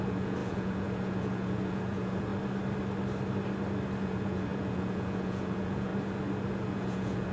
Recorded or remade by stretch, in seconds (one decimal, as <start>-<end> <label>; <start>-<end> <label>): 0.0-2.3 remade; 2.3-4.0 recorded; 4.0-5.9 remade; 5.9-6.5 recorded; 6.5-7.3 remade